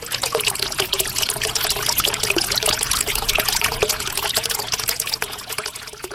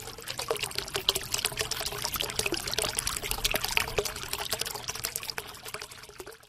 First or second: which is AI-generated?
first